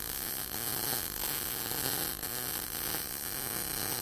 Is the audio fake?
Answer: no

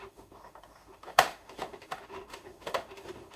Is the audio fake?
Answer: yes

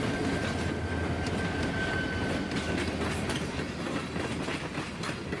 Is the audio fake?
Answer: no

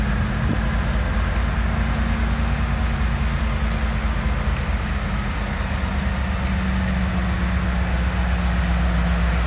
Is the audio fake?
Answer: no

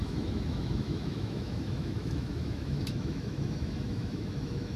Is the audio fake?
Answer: yes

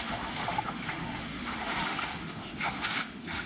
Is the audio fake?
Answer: yes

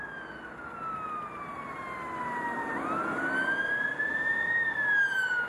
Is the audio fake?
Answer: no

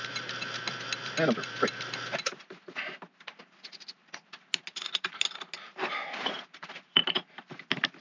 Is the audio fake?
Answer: no